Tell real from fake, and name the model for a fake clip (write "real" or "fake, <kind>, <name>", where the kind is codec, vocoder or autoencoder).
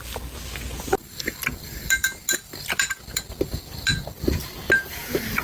real